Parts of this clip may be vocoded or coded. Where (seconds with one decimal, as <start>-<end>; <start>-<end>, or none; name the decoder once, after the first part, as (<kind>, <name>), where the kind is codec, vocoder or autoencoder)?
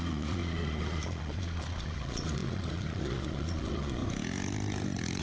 0.0-4.0 (vocoder, Vocos)